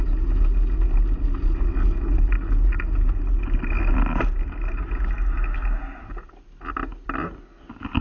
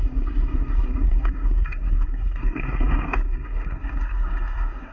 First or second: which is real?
first